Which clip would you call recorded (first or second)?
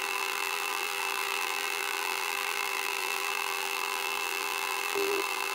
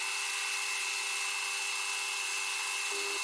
second